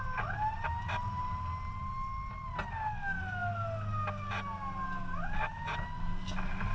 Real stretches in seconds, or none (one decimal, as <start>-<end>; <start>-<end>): 0.0-6.7